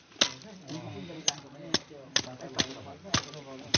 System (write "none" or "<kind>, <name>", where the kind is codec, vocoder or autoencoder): none